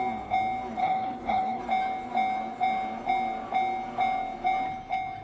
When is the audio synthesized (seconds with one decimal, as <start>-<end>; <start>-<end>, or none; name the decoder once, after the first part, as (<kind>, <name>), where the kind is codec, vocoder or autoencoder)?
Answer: 0.8-1.6 (codec, HILCodec)